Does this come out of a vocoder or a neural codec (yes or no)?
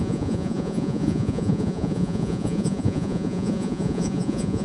yes